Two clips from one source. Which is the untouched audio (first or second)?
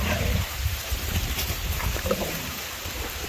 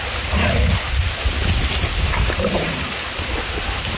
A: second